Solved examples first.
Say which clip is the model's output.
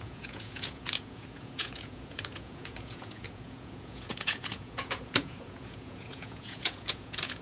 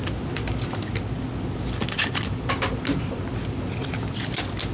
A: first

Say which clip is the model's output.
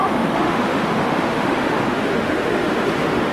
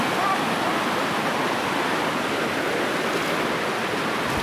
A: first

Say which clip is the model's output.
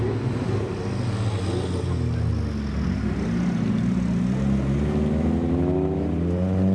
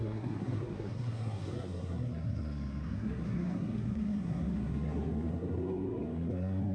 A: second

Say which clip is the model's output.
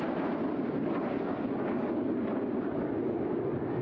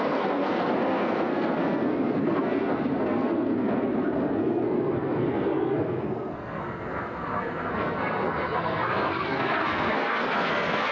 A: second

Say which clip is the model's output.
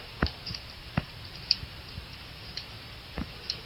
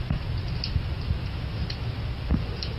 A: first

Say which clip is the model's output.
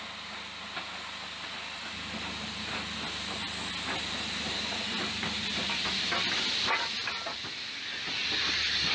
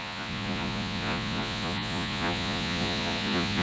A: second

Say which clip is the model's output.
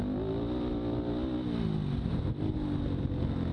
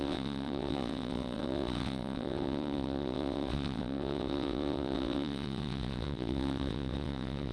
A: second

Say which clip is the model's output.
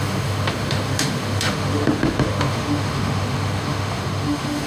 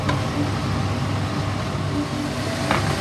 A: first